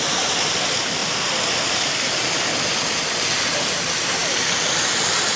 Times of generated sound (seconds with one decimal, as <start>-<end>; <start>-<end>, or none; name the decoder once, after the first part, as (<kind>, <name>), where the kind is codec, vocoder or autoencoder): none